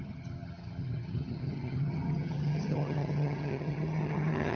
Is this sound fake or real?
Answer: fake